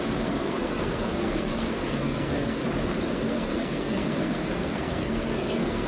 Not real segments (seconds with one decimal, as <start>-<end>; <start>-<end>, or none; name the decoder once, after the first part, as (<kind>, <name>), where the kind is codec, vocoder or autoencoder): 0.0-2.6 (codec, SNAC); 3.1-5.9